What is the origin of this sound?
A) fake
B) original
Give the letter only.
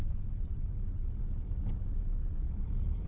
B